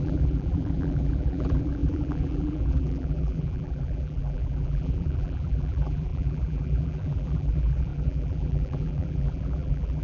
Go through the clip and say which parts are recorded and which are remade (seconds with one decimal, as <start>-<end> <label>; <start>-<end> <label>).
0.0-10.0 remade